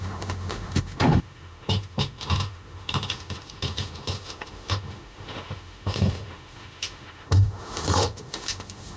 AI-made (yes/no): yes